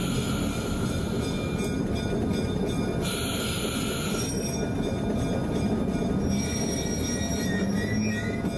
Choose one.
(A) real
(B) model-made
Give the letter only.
A